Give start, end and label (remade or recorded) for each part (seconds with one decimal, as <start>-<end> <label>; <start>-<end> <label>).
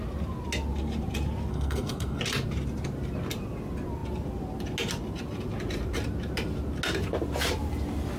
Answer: 0.0-1.5 recorded; 1.5-2.2 remade; 2.2-8.2 recorded